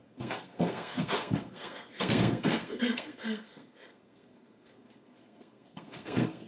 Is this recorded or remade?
remade